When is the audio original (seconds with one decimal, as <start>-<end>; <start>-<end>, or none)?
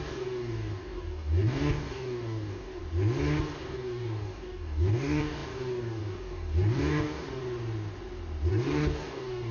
2.8-3.6; 7.4-8.5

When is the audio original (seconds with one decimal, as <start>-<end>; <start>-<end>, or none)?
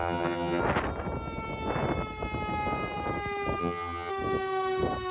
0.6-3.6; 4.1-5.1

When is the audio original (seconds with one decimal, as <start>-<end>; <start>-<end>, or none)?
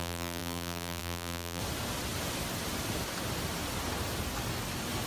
1.6-5.1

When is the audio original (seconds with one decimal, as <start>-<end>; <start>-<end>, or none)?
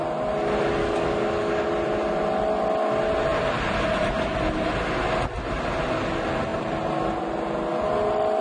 0.0-0.8; 1.7-8.4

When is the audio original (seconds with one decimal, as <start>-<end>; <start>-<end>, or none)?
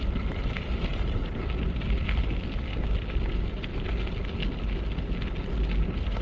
0.0-6.2